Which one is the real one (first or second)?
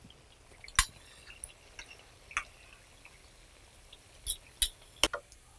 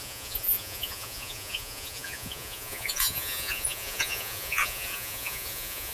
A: first